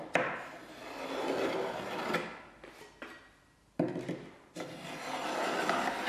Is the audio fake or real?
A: real